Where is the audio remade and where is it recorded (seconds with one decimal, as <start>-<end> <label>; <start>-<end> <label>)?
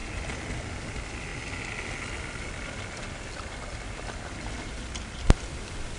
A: 0.0-6.0 recorded